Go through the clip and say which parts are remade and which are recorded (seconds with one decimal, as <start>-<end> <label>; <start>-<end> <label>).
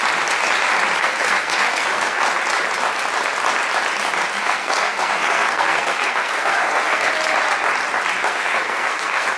0.0-1.0 recorded; 1.0-2.2 remade; 2.2-4.4 recorded; 4.4-7.1 remade; 7.1-8.2 recorded; 8.2-9.4 remade